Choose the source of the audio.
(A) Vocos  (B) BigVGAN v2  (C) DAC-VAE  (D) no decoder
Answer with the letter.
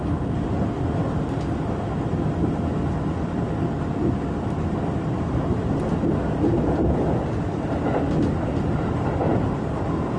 D